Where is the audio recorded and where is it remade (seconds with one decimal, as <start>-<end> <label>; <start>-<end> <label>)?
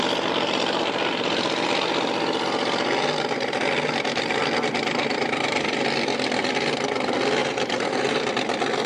0.0-7.4 recorded; 7.4-8.3 remade; 8.3-8.9 recorded